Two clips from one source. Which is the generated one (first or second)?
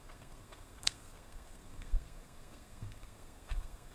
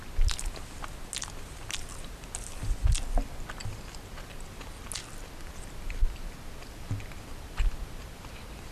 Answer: first